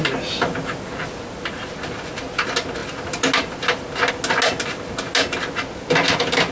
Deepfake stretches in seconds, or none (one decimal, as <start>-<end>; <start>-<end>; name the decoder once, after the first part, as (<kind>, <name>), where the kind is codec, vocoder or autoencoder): none

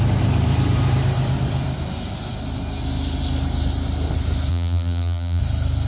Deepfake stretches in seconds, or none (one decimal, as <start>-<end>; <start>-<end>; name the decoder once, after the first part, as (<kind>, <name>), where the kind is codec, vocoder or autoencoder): 4.5-5.4 (vocoder, BigVGAN v2)

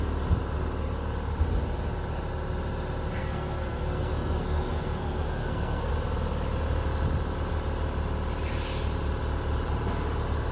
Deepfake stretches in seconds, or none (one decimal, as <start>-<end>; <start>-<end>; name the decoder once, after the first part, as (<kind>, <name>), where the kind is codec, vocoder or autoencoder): 3.2-5.9 (codec, SNAC)

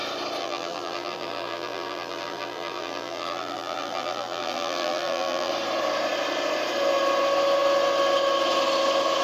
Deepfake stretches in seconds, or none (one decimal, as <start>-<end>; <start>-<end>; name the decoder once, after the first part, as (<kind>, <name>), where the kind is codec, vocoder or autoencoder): 0.4-5.5 (vocoder, BigVGAN v2)

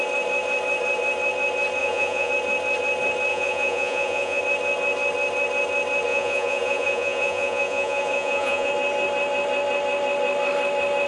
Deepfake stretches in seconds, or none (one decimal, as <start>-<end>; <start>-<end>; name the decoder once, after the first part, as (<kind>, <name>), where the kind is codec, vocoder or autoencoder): 1.8-2.3 (vocoder, Vocos); 3.3-4.4; 6.1-8.7

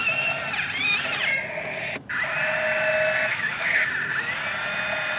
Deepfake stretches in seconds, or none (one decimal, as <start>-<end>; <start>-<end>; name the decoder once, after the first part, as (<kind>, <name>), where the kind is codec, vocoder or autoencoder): 3.3-3.9 (codec, DAC)

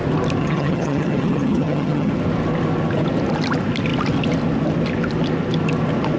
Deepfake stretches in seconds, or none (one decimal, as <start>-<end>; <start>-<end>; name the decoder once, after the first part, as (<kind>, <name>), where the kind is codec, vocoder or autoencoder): 0.4-2.1 (vocoder, HiFi-GAN)